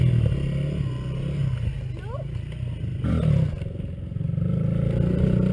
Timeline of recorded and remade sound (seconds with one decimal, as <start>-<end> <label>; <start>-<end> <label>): 0.0-5.5 recorded